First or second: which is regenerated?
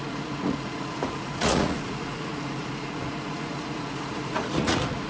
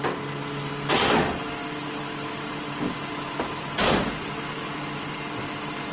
first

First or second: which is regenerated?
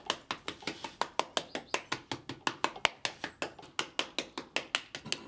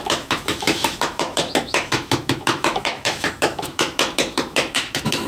second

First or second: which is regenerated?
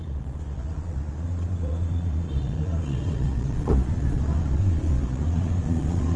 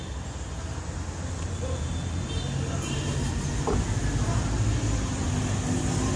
first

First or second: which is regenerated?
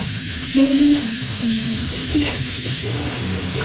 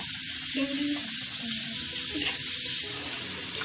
first